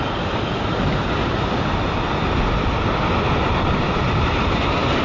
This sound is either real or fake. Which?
real